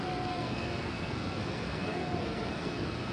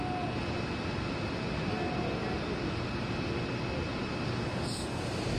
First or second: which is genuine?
second